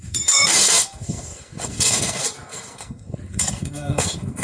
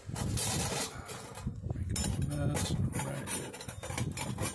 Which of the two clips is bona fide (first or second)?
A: second